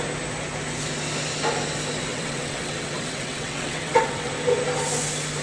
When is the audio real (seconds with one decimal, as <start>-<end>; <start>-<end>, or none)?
0.0-2.1; 4.3-5.4